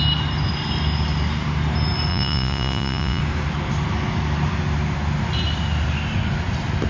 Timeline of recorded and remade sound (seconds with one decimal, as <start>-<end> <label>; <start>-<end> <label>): 0.0-2.1 recorded; 2.1-3.2 remade; 3.2-6.9 recorded

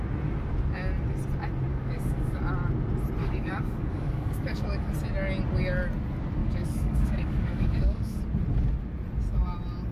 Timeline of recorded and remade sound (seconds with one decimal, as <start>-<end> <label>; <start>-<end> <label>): 0.0-1.7 recorded; 1.7-2.4 remade; 2.4-3.2 recorded; 3.2-4.9 remade; 4.9-6.4 recorded; 6.4-8.2 remade; 8.2-9.9 recorded

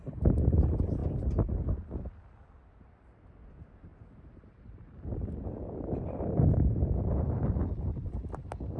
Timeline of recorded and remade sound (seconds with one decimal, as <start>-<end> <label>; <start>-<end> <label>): 0.0-8.8 recorded

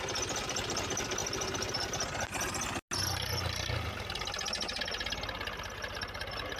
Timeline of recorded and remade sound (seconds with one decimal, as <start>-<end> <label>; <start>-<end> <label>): 0.0-6.6 recorded

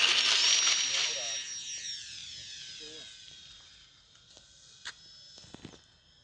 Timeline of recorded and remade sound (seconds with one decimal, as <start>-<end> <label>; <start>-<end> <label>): 0.0-6.2 recorded

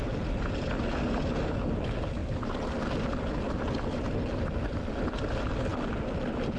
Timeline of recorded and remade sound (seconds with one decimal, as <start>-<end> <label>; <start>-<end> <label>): 0.0-6.6 recorded